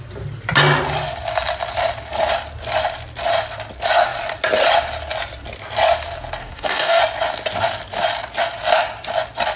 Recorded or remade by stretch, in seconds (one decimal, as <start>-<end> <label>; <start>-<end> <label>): 0.0-6.4 recorded; 6.4-7.0 remade; 7.0-9.6 recorded

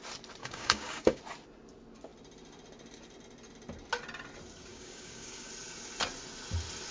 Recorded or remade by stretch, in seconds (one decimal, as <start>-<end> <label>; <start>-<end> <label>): 0.0-0.4 recorded; 0.4-1.2 remade; 1.2-4.7 recorded; 4.7-5.5 remade; 5.5-6.9 recorded

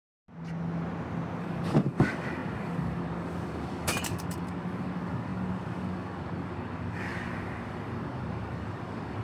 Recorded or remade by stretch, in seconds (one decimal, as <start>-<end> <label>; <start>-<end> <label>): 0.0-1.4 recorded; 1.4-9.2 remade

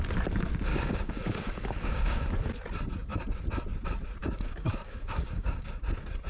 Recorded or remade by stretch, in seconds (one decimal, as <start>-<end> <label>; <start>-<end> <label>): 0.0-0.7 recorded; 0.7-2.2 remade; 2.2-4.2 recorded; 4.2-5.8 remade; 5.8-6.3 recorded

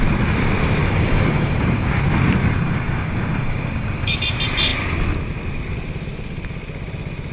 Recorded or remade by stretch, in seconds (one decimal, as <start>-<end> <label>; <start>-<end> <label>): 0.0-0.8 recorded; 0.8-2.0 remade; 2.0-2.4 recorded; 2.4-4.2 remade; 4.2-7.3 recorded

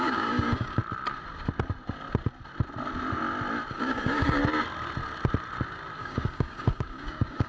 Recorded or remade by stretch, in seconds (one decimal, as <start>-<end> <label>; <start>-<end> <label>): 0.0-0.8 remade; 0.8-3.7 recorded; 3.7-4.4 remade; 4.4-6.0 recorded; 6.0-7.5 remade

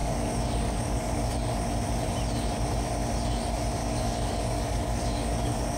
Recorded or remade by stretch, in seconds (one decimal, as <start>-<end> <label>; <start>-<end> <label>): 0.0-1.3 remade; 1.3-3.8 recorded; 3.8-5.8 remade